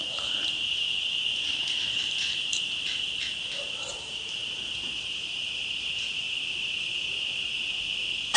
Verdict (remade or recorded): remade